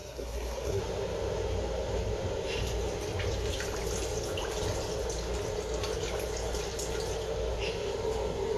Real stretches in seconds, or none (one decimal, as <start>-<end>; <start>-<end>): 0.8-8.6